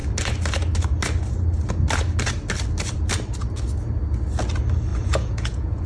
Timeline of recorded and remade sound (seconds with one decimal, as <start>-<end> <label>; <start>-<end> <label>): 0.0-4.9 recorded; 4.9-5.9 remade